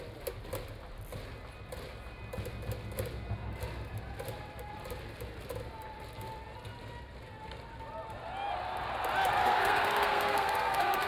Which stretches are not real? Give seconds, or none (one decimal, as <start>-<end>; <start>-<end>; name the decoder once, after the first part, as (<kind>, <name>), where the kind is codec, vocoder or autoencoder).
9.4-11.1 (codec, SNAC)